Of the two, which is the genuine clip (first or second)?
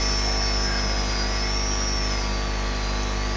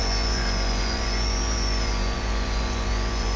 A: first